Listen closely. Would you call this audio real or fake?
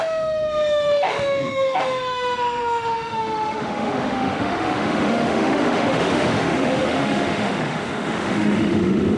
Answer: fake